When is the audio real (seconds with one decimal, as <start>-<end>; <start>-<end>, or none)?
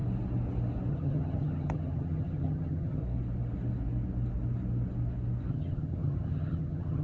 0.0-0.9; 3.0-5.5